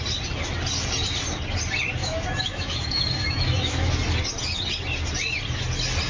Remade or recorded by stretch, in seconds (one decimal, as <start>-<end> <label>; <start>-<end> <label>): 0.0-2.0 recorded; 2.0-3.9 remade; 3.9-6.1 recorded